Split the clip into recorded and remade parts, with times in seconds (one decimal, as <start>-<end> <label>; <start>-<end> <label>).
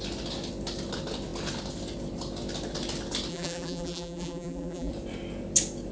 0.0-3.3 recorded; 3.3-4.9 remade; 4.9-5.9 recorded